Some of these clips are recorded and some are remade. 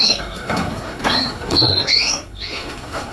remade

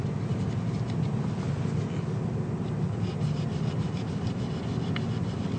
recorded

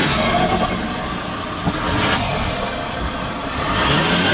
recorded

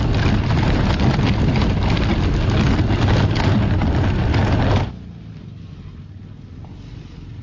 recorded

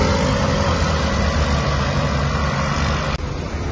recorded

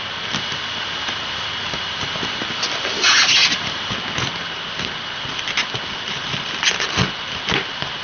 recorded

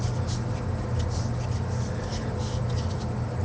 recorded